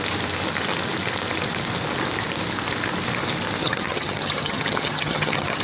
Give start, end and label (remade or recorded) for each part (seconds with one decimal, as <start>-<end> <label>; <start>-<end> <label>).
0.0-3.6 recorded; 3.6-5.6 remade